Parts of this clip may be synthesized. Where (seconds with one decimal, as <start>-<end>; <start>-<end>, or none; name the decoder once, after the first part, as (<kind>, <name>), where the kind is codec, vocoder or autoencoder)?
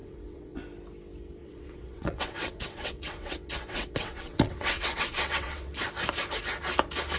0.0-0.6 (vocoder, WaveNeXt); 1.4-5.7